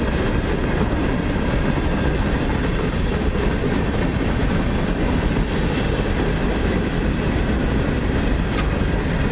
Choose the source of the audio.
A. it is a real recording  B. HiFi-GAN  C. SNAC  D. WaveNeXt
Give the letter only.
A